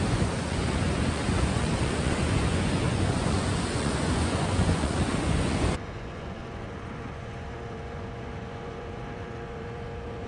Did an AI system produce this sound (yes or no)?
yes